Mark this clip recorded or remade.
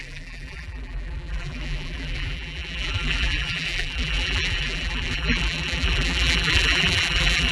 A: remade